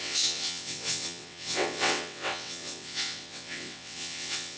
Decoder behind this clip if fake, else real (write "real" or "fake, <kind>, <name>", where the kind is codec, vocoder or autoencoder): fake, vocoder, WaveNeXt